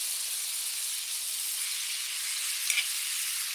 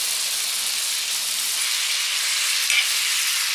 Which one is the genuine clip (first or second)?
second